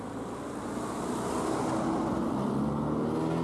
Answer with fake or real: real